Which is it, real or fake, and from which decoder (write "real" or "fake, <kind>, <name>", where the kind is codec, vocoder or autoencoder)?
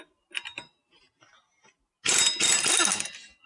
real